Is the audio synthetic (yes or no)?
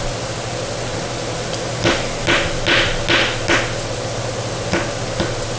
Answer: no